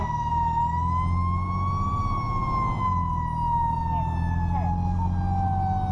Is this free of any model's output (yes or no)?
yes